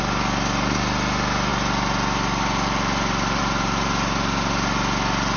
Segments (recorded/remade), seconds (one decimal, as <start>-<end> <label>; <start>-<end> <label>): 0.0-5.4 recorded